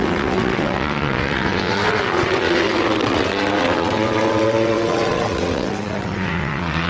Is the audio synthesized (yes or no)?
yes